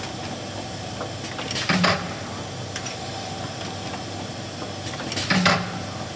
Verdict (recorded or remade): recorded